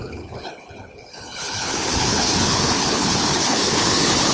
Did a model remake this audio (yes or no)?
yes